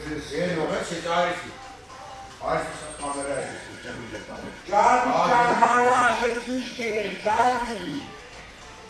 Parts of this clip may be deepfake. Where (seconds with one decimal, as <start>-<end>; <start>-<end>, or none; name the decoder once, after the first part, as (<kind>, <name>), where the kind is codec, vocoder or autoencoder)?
3.4-4.6 (codec, SNAC); 5.5-8.0